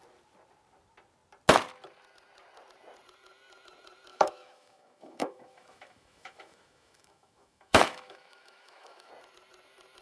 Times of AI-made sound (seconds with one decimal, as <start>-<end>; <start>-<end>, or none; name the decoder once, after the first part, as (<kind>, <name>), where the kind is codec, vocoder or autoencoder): 4.1-9.1 (autoencoder, DAC-VAE)

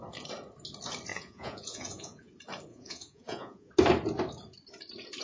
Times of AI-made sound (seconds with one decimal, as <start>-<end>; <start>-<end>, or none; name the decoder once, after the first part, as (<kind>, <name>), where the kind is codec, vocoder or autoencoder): 1.1-2.3 (vocoder, Vocos); 2.7-3.7